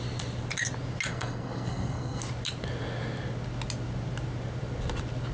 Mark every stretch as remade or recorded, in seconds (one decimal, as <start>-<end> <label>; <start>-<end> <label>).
0.0-1.1 recorded; 1.1-2.2 remade; 2.2-5.3 recorded